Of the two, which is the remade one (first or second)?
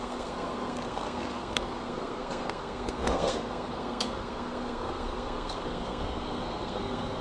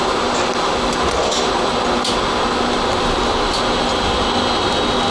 first